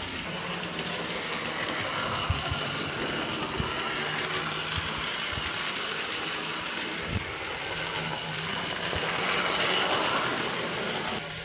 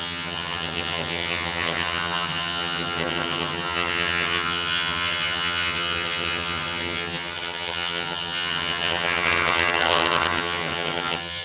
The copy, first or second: second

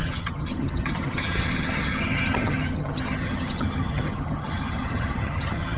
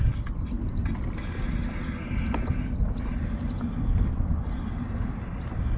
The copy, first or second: first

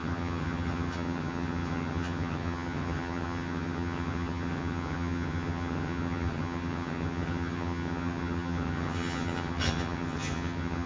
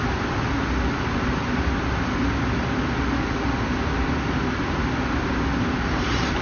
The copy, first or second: first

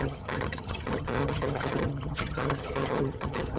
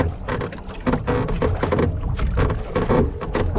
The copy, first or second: first